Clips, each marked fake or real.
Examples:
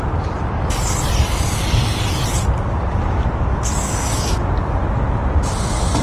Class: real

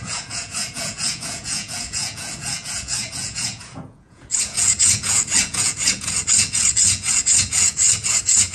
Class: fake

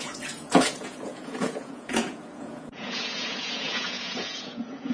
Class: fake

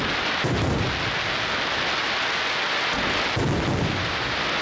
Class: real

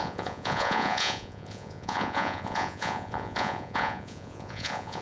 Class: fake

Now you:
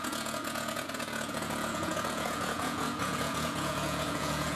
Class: fake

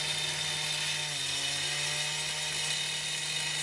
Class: real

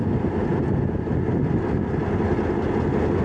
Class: real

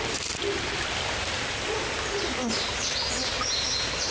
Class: real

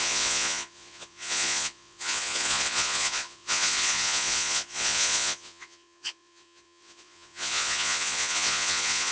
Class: fake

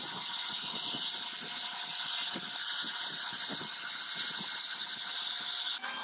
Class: real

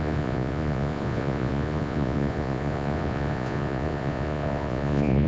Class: fake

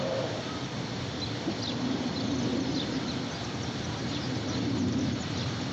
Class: real